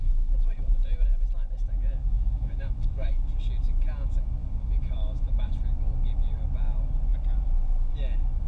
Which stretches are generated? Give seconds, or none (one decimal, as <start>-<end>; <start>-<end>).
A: 2.0-3.1; 4.4-5.5